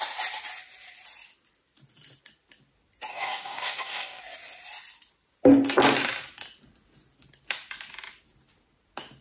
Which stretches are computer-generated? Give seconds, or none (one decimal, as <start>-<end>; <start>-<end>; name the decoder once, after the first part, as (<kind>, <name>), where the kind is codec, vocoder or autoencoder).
3.1-4.2 (codec, DAC)

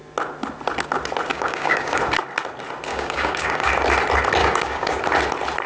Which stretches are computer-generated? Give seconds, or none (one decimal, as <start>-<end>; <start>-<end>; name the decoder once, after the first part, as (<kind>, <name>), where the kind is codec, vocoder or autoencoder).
1.3-2.0 (codec, DAC); 2.9-3.7; 4.4-5.0